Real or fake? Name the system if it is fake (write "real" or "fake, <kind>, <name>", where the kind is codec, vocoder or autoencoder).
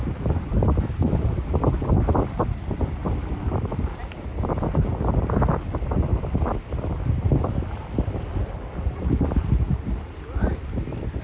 real